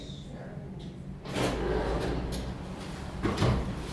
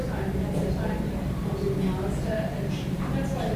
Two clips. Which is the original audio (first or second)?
first